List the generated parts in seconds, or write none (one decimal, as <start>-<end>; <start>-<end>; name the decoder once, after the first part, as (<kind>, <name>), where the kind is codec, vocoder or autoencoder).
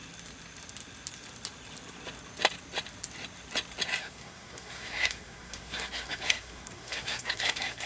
4.0-7.9 (codec, SNAC)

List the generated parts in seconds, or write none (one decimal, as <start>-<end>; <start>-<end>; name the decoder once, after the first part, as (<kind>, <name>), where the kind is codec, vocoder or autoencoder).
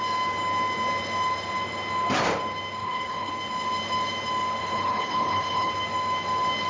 2.8-3.3 (codec, HILCodec); 4.6-5.7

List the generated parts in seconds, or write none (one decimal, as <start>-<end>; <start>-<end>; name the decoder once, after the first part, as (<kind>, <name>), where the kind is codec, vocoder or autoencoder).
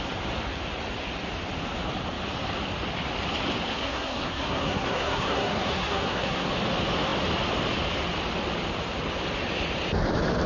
3.7-6.5 (codec, SNAC)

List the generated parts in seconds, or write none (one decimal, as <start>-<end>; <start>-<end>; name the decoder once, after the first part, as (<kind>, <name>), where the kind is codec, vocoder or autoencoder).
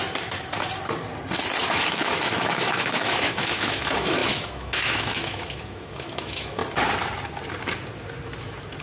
1.6-6.6 (autoencoder, DAC-VAE)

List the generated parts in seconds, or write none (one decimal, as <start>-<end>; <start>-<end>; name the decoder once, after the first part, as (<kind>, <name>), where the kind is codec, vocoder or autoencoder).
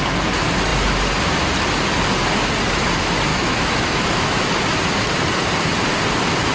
3.3-4.5 (autoencoder, DAC-VAE)